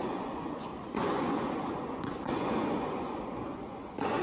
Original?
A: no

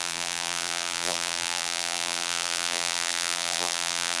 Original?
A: no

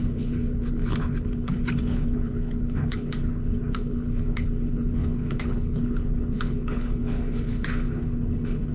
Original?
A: no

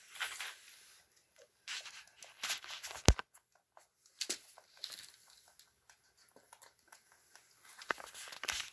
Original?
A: yes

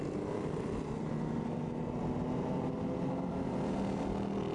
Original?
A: yes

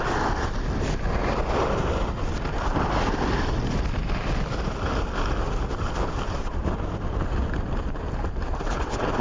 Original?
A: yes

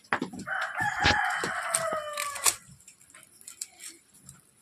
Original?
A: yes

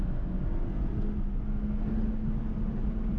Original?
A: yes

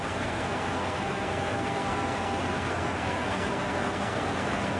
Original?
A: no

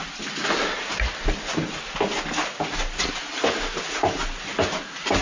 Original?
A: yes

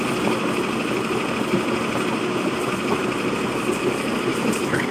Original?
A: yes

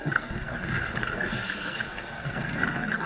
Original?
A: no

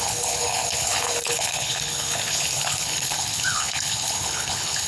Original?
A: no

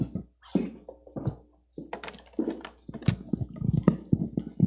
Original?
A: yes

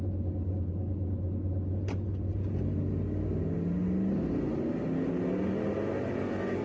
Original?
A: yes